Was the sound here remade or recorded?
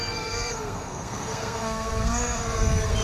remade